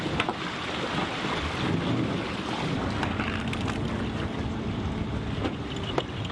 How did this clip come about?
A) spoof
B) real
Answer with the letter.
B